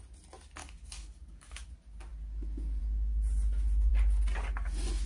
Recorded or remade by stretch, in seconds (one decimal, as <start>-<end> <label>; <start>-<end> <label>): 0.0-0.6 recorded; 0.6-1.7 remade; 1.7-5.1 recorded